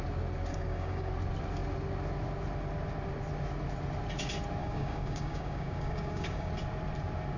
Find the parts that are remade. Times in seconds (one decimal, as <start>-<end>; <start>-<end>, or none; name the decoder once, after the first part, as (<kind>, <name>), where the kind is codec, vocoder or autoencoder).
0.5-1.1 (codec, DAC); 4.6-6.5